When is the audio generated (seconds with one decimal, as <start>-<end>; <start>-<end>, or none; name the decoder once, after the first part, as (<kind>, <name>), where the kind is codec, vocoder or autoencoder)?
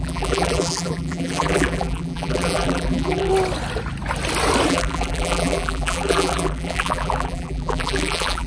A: 0.0-3.3 (vocoder, BigVGAN v2); 4.7-8.5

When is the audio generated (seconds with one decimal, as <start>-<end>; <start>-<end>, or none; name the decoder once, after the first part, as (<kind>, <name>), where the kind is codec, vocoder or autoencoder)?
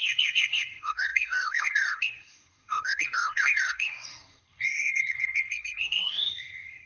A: 0.0-6.9 (codec, SNAC)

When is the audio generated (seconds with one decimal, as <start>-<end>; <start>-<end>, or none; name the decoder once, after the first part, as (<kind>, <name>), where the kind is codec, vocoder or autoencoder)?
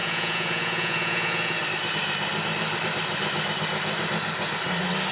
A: 0.0-1.6 (vocoder, Vocos)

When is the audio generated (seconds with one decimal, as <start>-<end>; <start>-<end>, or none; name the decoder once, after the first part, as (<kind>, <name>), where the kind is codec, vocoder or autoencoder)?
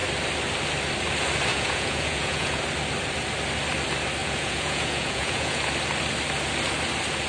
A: 1.5-2.6 (vocoder, Vocos); 4.2-5.6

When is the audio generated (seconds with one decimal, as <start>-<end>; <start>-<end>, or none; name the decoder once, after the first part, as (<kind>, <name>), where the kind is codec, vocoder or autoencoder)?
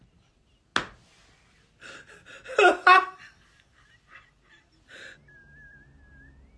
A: none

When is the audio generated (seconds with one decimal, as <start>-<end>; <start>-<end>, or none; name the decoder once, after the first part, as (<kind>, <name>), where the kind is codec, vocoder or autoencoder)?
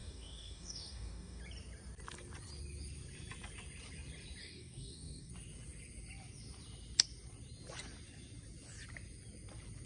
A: 0.0-1.4 (codec, DAC); 4.4-5.3